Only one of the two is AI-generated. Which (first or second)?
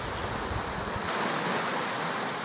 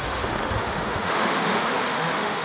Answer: second